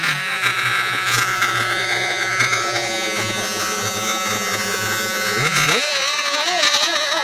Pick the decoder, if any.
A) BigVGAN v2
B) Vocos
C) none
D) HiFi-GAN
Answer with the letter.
B